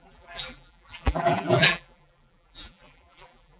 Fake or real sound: fake